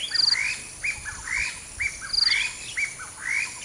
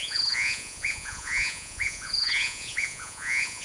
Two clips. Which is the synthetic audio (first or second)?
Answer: second